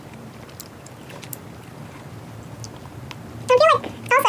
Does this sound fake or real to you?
real